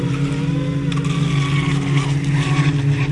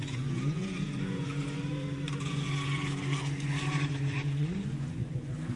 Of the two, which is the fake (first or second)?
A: second